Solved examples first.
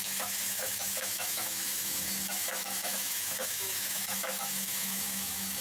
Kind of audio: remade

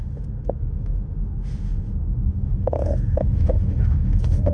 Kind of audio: remade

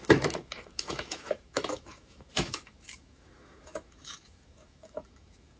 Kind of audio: remade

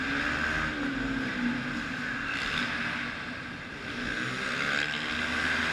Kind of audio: recorded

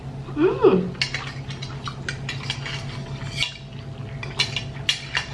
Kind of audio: recorded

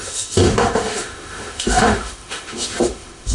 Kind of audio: remade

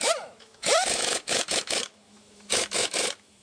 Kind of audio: remade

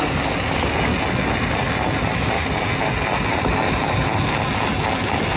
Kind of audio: recorded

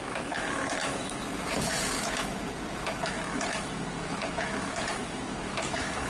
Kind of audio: remade